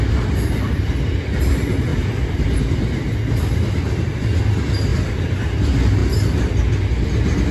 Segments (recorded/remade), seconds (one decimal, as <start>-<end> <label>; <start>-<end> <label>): 0.0-1.9 recorded; 1.9-2.6 remade; 2.6-7.5 recorded